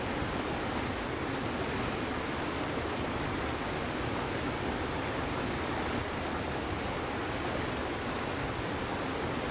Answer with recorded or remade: recorded